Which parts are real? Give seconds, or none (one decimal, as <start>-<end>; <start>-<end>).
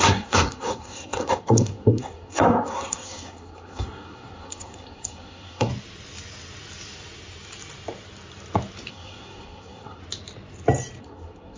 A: 5.7-8.9; 10.0-11.0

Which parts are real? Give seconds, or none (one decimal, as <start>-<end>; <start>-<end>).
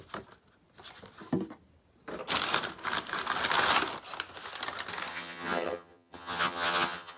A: 0.0-5.1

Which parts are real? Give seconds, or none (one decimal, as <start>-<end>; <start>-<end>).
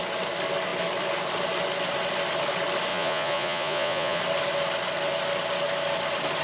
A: 0.0-2.9; 4.2-6.4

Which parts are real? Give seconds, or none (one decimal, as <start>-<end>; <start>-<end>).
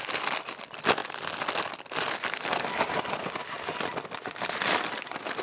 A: 0.0-5.4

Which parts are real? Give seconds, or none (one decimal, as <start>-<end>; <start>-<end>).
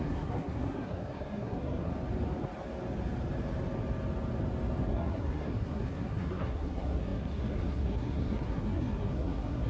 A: 1.9-4.9